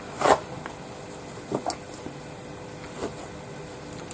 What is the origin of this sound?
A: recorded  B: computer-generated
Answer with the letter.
A